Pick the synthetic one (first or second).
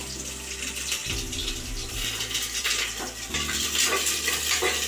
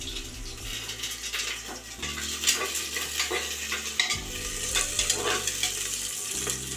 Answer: first